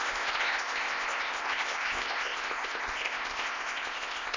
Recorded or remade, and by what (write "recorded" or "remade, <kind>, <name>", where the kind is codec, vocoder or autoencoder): remade, codec, ZipCodec